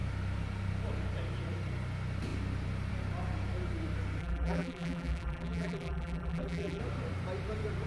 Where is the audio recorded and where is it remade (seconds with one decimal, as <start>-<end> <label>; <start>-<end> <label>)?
0.0-4.2 recorded; 4.2-6.8 remade; 6.8-7.9 recorded

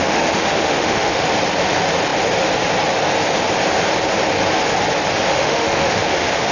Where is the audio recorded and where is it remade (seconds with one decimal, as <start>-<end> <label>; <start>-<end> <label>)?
0.0-1.3 remade; 1.3-5.3 recorded; 5.3-6.5 remade

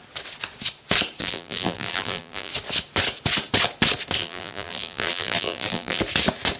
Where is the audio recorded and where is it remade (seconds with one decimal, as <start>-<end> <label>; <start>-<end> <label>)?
0.0-1.2 recorded; 1.2-2.5 remade; 2.5-4.2 recorded; 4.2-6.0 remade; 6.0-6.6 recorded

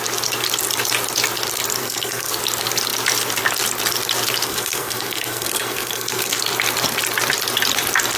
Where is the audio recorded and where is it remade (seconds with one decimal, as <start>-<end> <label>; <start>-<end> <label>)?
0.0-1.8 recorded; 1.8-2.3 remade; 2.3-4.5 recorded; 4.5-6.4 remade; 6.4-8.2 recorded

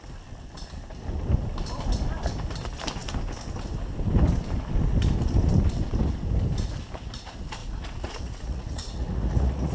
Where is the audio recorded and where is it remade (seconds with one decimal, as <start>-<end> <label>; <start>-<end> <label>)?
0.0-7.6 recorded; 7.6-9.7 remade